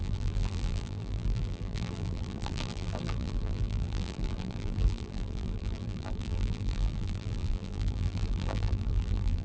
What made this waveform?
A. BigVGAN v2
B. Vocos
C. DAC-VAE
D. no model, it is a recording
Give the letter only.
A